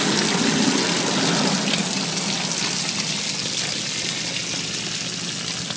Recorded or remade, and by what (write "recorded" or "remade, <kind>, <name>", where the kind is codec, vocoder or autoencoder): recorded